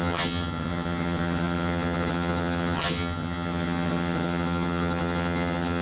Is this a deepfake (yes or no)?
yes